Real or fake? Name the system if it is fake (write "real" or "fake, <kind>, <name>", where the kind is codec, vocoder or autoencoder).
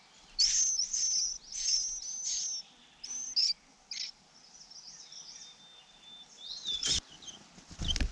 real